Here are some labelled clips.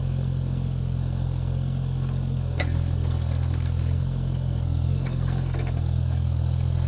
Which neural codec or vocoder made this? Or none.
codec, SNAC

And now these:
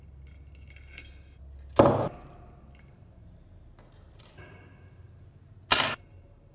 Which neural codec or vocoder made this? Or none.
none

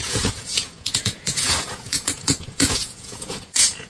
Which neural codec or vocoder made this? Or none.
vocoder, Vocos